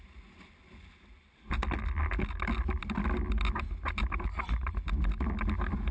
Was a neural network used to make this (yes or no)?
no